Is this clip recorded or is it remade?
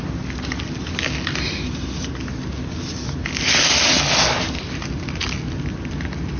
recorded